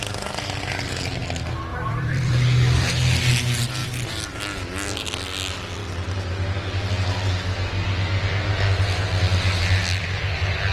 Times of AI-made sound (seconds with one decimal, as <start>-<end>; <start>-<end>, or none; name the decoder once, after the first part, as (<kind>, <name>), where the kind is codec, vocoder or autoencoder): 1.7-2.9 (vocoder, BigVGAN v2); 3.8-4.4